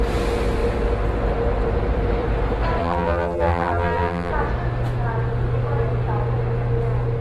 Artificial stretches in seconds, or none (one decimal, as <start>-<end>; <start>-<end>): 2.8-4.3